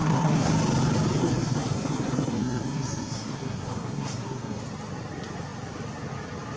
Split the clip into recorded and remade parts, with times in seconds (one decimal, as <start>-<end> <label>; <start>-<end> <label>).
0.0-0.5 remade; 0.5-1.2 recorded; 1.2-4.6 remade; 4.6-6.6 recorded